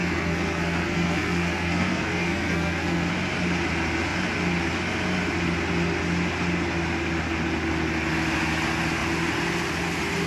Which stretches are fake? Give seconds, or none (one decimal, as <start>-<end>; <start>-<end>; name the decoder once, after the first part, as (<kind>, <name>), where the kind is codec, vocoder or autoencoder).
0.0-3.1 (codec, SNAC)